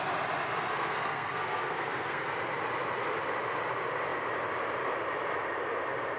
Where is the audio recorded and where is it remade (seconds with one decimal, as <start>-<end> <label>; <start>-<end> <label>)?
0.0-0.7 recorded; 0.7-2.3 remade; 2.3-6.2 recorded